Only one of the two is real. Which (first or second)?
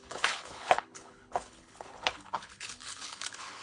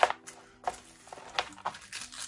second